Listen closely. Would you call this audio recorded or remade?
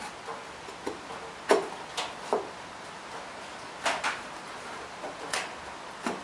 recorded